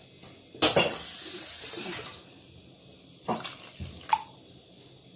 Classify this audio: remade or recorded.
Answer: recorded